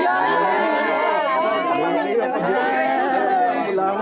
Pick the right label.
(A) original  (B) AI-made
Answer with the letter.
A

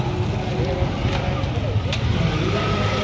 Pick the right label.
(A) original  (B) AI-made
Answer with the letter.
A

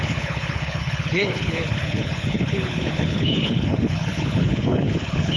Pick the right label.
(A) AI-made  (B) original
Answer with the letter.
A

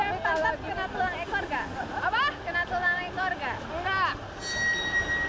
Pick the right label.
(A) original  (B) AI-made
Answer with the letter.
A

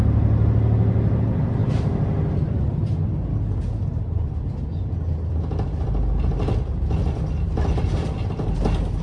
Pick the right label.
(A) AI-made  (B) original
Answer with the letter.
B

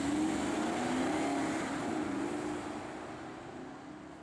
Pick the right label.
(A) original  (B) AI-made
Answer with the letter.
A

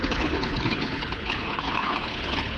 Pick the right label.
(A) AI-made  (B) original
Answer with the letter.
A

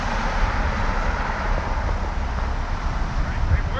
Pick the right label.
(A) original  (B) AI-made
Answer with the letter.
A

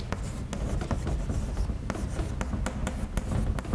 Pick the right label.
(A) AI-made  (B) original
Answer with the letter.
B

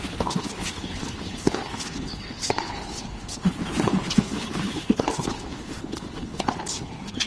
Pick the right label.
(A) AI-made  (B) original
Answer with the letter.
A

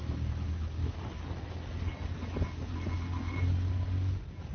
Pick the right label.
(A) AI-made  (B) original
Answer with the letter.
B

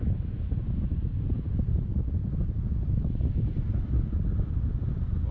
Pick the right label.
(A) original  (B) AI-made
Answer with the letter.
A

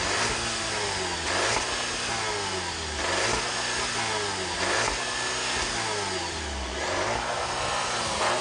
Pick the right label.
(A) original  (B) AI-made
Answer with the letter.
A